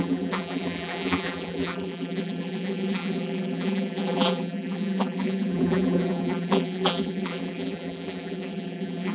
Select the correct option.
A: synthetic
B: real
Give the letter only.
A